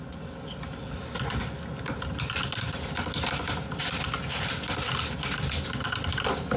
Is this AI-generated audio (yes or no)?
no